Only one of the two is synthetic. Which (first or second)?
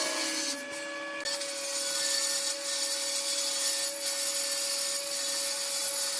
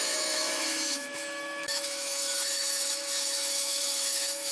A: second